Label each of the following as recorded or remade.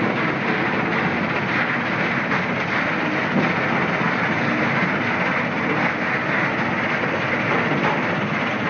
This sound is recorded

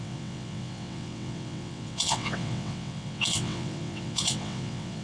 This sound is remade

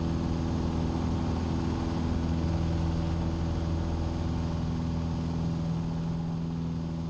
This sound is recorded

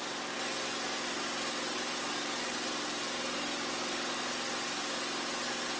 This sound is recorded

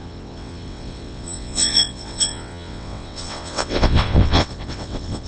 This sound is remade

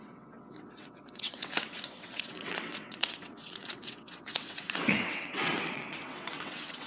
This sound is remade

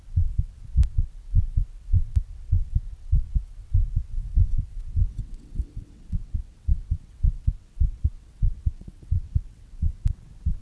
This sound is remade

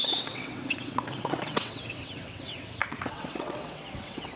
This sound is remade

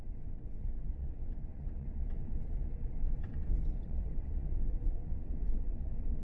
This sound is remade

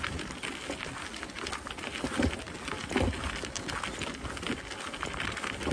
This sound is recorded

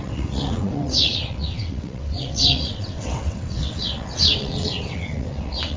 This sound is remade